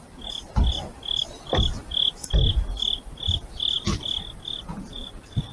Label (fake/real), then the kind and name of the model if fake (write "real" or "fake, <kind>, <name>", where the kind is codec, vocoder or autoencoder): real